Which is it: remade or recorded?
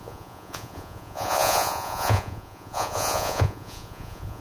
remade